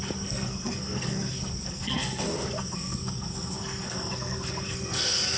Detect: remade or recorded remade